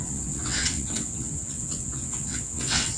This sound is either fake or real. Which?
fake